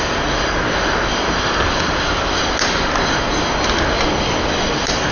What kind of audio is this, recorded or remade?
recorded